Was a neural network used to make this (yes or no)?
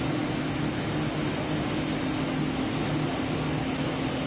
no